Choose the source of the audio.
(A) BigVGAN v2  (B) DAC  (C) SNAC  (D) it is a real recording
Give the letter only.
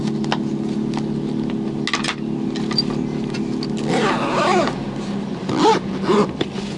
D